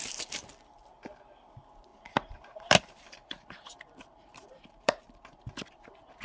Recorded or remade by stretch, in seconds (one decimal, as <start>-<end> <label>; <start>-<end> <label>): 0.0-0.5 remade; 0.5-1.9 recorded; 1.9-5.4 remade; 5.4-6.2 recorded